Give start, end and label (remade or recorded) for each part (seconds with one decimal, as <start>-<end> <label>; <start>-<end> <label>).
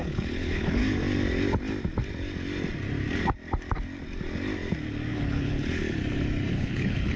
0.0-0.8 remade; 0.8-5.1 recorded; 5.1-5.8 remade; 5.8-6.5 recorded; 6.5-7.2 remade